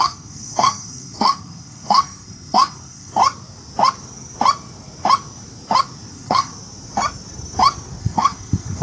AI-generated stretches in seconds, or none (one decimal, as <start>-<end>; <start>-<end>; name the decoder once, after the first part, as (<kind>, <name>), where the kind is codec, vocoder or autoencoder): 0.0-3.2 (codec, SNAC); 6.1-6.5; 8.0-8.8